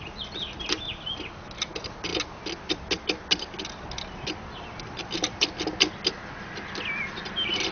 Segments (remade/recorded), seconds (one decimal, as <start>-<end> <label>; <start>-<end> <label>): 0.0-7.7 recorded